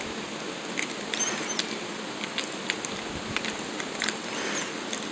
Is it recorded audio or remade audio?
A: recorded